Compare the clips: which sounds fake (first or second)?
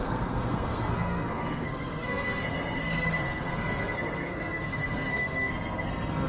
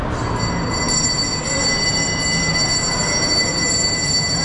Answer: first